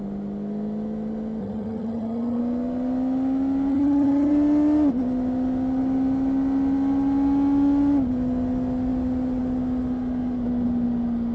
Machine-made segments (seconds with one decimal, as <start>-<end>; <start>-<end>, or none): 1.4-2.4; 3.7-4.3